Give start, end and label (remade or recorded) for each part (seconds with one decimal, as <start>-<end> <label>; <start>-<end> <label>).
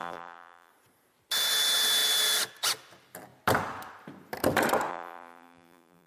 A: 0.0-0.7 remade; 0.7-4.9 recorded; 4.9-6.1 remade